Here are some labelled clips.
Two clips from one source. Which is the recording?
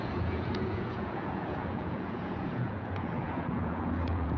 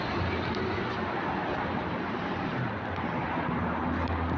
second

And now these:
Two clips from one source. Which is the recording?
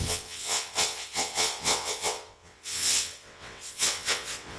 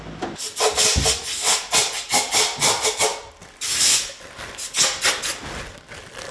second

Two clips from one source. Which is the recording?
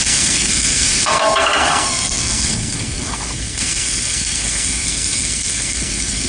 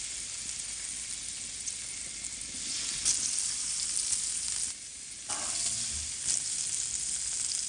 second